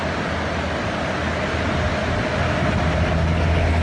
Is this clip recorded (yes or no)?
yes